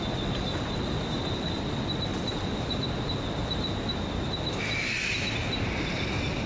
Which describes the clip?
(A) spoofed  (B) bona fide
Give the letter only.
B